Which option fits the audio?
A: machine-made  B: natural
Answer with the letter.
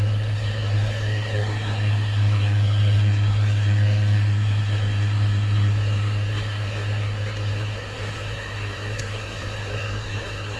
A